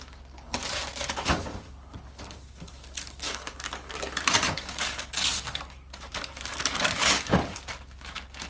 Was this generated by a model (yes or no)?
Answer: yes